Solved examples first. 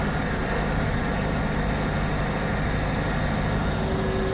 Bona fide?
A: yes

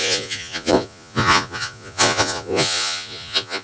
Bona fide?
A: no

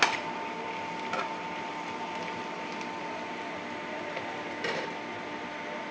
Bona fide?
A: yes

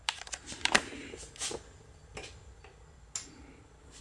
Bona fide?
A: yes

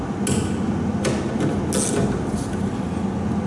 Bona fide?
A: yes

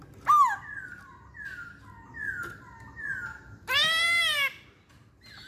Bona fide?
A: yes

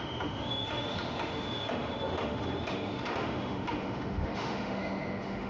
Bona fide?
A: no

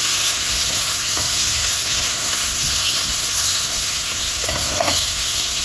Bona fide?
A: no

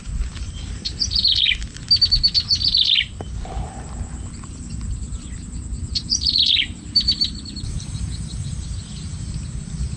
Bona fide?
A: yes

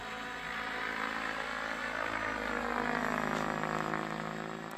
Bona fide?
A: yes